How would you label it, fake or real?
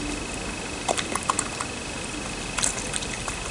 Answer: real